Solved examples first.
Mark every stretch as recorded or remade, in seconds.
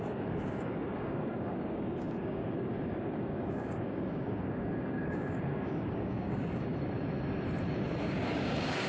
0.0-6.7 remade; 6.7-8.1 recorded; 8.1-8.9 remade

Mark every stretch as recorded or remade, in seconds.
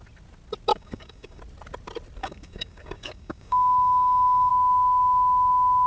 0.0-0.7 recorded; 0.7-1.4 remade; 1.4-2.2 recorded; 2.2-4.5 remade; 4.5-5.9 recorded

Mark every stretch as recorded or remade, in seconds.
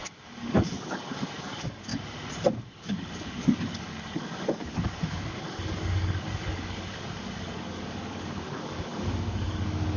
0.0-1.9 remade; 1.9-2.8 recorded; 2.8-10.0 remade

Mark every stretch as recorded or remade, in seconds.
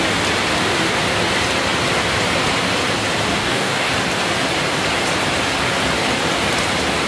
0.0-3.3 recorded; 3.3-3.9 remade; 3.9-7.1 recorded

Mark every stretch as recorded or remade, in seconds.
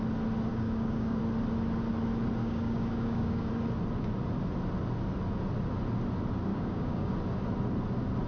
0.0-0.5 recorded; 0.5-1.2 remade; 1.2-2.4 recorded; 2.4-3.5 remade; 3.5-6.5 recorded; 6.5-7.1 remade; 7.1-8.3 recorded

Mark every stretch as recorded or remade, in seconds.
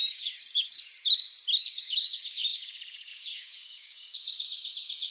0.0-0.8 remade; 0.8-1.6 recorded; 1.6-5.1 remade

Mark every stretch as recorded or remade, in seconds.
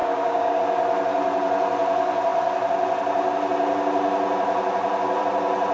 0.0-0.6 remade; 0.6-5.7 recorded